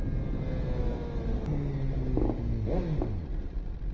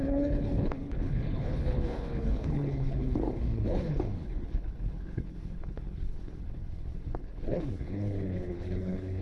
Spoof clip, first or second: second